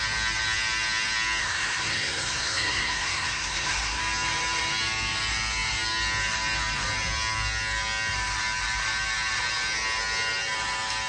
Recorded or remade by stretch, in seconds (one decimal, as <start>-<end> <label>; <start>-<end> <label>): 0.0-1.4 recorded; 1.4-4.0 remade; 4.0-11.1 recorded